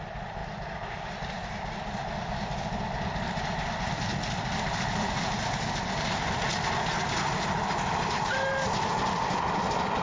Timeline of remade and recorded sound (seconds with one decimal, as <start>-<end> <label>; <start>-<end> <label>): 0.0-10.0 recorded